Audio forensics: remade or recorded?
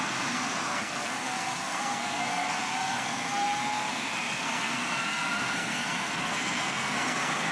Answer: remade